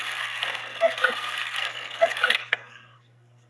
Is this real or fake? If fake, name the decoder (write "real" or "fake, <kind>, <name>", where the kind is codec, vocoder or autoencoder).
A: fake, codec, SNAC